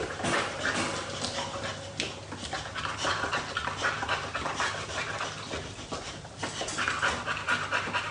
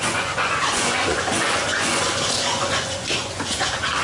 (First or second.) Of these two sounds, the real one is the first